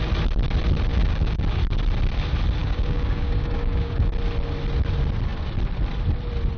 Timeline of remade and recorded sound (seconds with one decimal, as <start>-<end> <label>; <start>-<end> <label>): 0.0-0.9 recorded; 0.9-1.6 remade; 1.6-2.6 recorded; 2.6-4.1 remade; 4.1-6.6 recorded